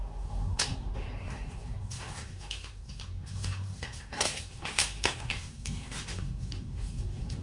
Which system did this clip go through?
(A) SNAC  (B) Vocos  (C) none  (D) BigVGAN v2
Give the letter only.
A